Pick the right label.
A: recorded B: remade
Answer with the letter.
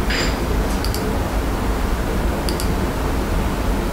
A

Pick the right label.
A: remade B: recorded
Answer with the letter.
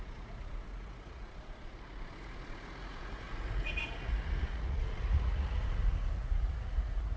A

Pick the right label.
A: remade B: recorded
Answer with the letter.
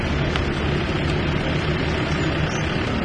B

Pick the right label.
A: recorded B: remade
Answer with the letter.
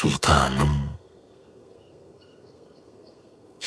B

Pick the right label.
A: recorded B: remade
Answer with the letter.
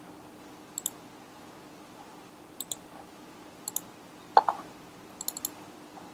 A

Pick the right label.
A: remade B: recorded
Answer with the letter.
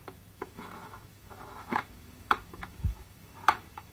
A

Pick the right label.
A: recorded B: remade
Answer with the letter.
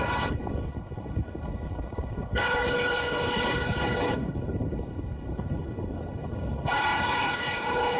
B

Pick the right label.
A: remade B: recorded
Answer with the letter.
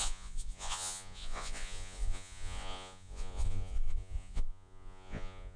A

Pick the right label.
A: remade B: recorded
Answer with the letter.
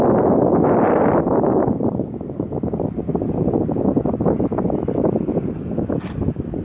B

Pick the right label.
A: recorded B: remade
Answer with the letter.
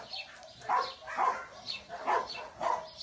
A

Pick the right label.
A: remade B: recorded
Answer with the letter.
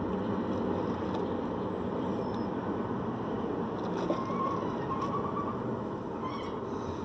B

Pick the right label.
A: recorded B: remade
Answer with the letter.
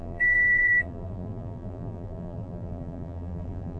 B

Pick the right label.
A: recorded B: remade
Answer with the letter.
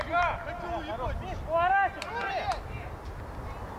A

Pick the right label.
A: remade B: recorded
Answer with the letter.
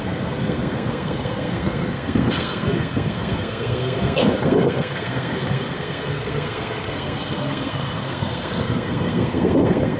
A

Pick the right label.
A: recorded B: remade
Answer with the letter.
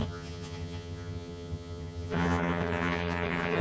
B